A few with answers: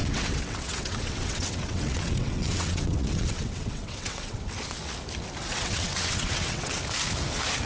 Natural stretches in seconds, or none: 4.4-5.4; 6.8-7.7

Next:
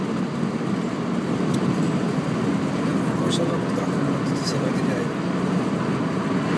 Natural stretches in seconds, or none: 0.0-6.6

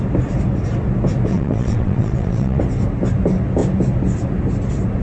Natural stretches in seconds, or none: 0.0-1.3; 2.6-5.0

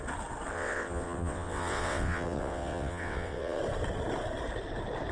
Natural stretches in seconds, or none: 0.0-0.5; 3.6-5.1

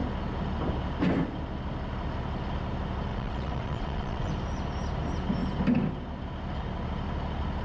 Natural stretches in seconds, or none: 0.0-3.1; 4.3-7.6

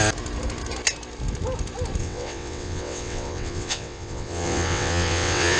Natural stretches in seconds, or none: 0.0-2.0

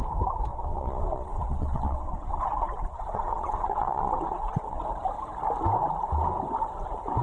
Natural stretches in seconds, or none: 0.0-0.5; 4.8-7.2